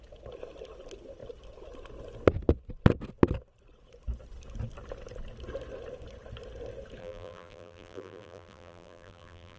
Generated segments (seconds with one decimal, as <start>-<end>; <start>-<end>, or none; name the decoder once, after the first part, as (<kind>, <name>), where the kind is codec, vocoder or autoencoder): 7.0-9.6 (vocoder, BigVGAN v2)